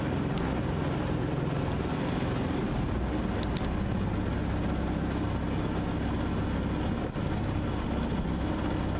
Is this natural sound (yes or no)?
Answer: yes